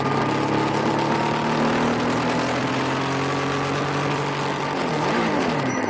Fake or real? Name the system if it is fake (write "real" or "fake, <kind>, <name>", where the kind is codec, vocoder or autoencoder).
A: real